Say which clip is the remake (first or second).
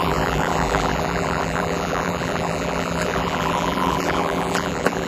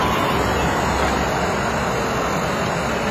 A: first